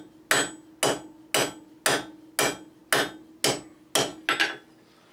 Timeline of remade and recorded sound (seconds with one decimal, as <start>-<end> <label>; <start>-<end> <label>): 0.0-5.1 recorded